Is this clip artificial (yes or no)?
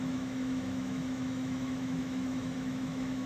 yes